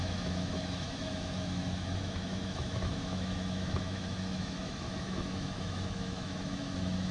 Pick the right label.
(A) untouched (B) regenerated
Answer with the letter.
B